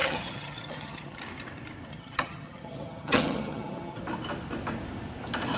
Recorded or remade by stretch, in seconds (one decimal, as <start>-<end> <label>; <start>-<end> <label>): 0.0-1.2 remade; 1.2-1.9 recorded; 1.9-4.0 remade; 4.0-5.6 recorded